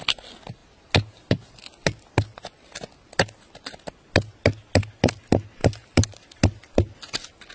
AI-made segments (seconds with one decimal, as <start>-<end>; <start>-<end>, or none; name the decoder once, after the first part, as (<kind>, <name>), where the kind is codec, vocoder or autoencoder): 5.6-6.3 (vocoder, BigVGAN v2)

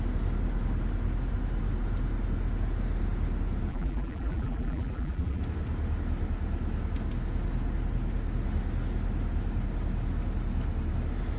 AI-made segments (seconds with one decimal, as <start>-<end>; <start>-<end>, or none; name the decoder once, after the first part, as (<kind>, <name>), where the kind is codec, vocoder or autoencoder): 3.7-5.4 (vocoder, BigVGAN v2)

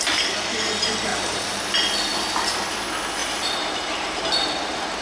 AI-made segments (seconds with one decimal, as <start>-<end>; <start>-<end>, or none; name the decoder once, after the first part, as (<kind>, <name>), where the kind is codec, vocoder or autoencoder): 1.1-1.6 (vocoder, BigVGAN v2); 3.2-4.2

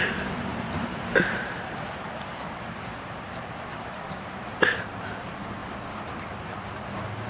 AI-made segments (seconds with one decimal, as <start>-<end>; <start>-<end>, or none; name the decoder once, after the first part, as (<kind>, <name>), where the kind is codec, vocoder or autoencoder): 0.5-4.8 (vocoder, BigVGAN v2)

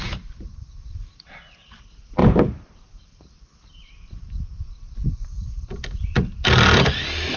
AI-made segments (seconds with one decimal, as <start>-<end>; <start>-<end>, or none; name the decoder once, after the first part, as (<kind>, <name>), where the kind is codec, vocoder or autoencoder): 2.2-3.4 (vocoder, BigVGAN v2)